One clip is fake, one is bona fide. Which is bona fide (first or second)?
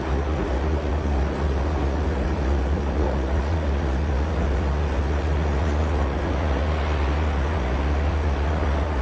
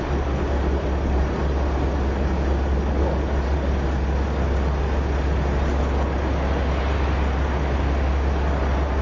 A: second